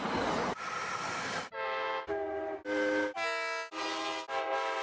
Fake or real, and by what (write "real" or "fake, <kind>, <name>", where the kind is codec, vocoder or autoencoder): real